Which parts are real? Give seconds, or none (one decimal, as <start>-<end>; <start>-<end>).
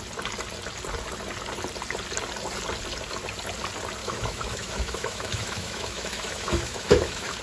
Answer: 0.0-4.0